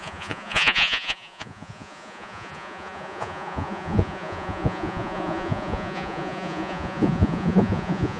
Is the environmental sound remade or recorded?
remade